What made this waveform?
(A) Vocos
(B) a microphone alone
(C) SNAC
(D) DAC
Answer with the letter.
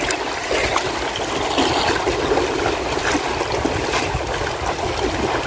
B